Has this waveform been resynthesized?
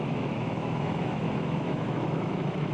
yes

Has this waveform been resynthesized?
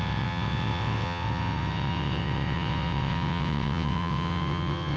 yes